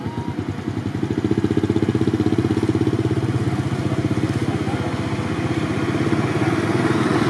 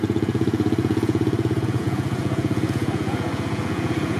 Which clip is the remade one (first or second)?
second